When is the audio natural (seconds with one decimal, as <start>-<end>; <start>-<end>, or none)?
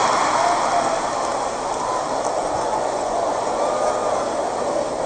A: 0.0-2.4; 3.6-5.1